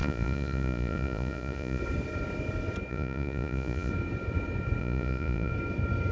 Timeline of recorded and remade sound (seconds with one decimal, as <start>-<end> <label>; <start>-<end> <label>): 0.0-1.8 remade; 1.8-2.9 recorded; 2.9-3.9 remade; 3.9-4.8 recorded; 4.8-5.5 remade; 5.5-6.1 recorded